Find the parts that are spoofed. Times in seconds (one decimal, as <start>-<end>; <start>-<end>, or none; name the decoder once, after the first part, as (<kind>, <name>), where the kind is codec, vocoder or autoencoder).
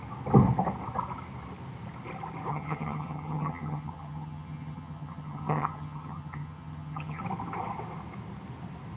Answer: 2.5-7.2 (vocoder, HiFi-GAN)